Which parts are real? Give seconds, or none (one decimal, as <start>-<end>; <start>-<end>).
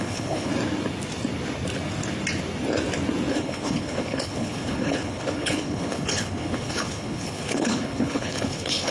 0.5-3.3